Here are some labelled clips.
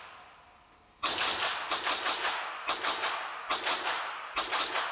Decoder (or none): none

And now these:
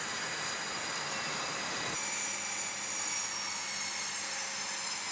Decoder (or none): none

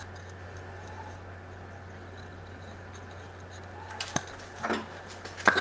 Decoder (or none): none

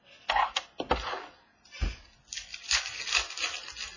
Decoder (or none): none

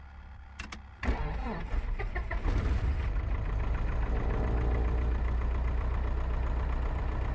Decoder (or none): none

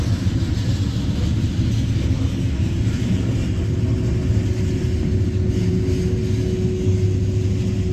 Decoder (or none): none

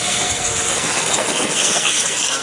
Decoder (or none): codec, SNAC